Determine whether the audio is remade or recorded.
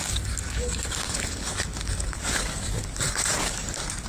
remade